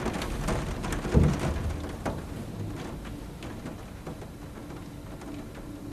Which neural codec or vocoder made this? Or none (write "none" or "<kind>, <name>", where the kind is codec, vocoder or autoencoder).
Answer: none